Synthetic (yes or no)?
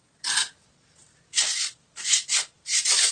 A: no